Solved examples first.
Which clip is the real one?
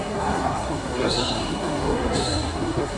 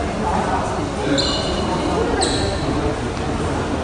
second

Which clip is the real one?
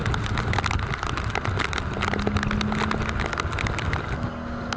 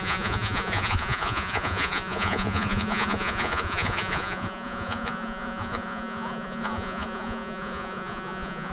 first